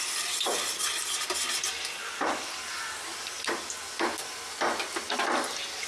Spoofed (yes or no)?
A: no